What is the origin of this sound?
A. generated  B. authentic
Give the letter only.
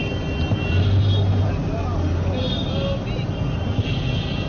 B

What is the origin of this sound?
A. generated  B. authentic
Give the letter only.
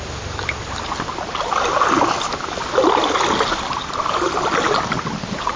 B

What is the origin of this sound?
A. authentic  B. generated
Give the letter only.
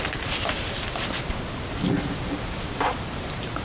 A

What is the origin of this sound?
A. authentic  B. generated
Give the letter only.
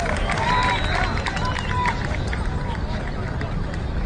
A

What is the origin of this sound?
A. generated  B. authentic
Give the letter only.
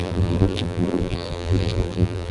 A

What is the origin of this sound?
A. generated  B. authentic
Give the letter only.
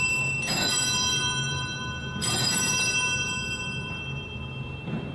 A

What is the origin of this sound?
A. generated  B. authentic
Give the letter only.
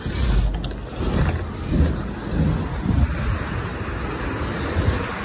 B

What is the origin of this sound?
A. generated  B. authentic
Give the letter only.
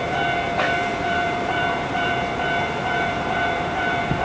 A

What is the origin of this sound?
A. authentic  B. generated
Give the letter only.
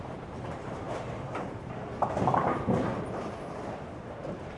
B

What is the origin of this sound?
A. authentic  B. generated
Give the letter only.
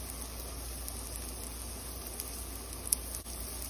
A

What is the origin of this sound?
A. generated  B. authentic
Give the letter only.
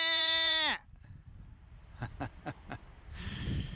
A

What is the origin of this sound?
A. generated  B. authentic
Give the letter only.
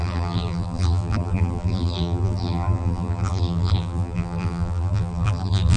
A